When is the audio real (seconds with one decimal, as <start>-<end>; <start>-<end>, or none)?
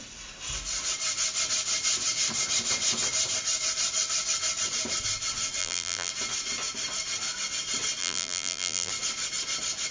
0.0-5.6; 6.1-8.0; 8.9-9.9